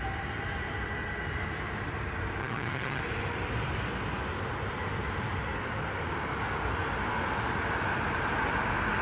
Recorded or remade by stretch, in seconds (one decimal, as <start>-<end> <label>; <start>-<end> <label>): 0.0-2.4 recorded; 2.4-3.0 remade; 3.0-9.0 recorded